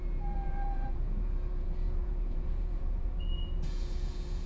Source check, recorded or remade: remade